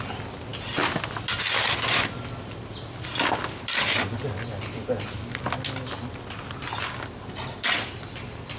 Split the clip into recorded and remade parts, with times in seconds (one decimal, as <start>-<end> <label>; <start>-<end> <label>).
0.0-8.6 recorded